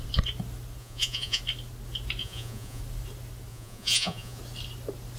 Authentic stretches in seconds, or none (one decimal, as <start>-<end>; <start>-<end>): 0.0-0.8; 1.4-2.2; 2.8-3.5; 4.4-5.2